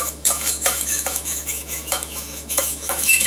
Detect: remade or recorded remade